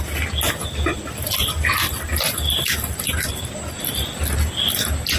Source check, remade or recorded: recorded